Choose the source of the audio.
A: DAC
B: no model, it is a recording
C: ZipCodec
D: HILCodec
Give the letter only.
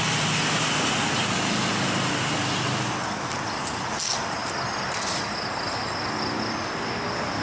B